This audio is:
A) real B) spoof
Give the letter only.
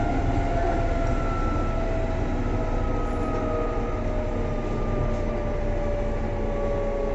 A